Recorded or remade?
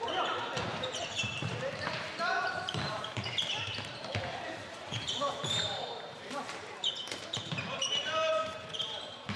remade